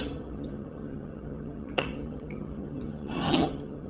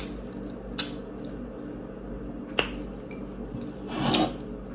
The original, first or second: second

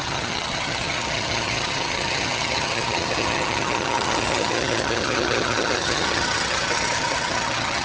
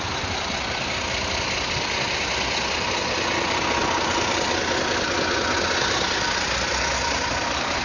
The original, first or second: second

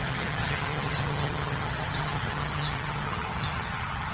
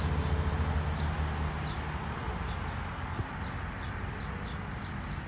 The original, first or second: second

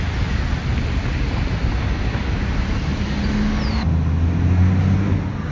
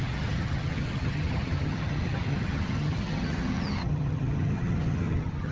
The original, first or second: first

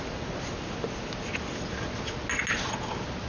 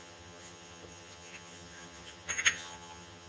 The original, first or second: first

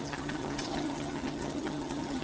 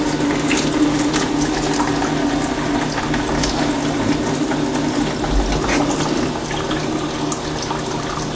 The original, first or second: second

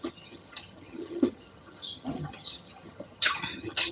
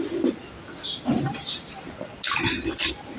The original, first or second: second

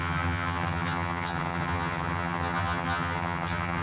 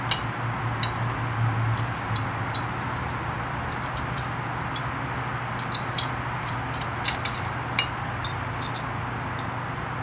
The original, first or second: second